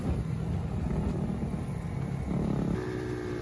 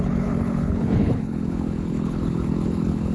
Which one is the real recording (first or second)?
first